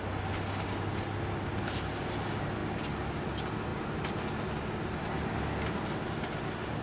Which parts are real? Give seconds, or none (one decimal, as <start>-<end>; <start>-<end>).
0.0-6.8